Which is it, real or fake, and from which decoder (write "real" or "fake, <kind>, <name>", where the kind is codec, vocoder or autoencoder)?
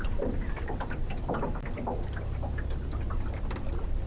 real